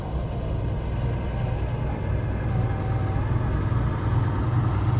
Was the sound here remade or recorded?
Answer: recorded